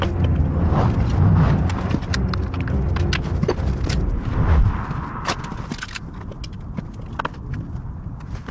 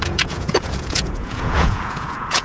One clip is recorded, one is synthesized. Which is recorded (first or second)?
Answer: first